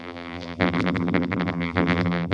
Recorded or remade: remade